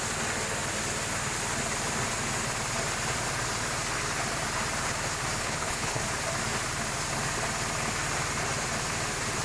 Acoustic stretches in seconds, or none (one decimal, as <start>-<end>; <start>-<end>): 0.0-5.4; 6.0-9.4